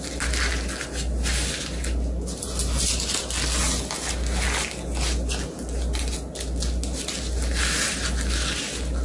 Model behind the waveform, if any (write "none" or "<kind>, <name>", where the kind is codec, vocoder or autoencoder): none